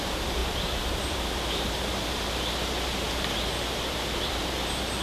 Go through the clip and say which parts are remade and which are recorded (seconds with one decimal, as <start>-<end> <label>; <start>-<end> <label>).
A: 0.0-5.0 remade